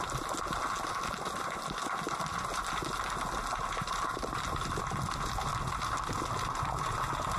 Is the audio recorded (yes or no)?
yes